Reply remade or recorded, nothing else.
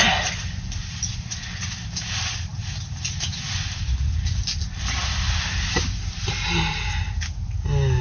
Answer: recorded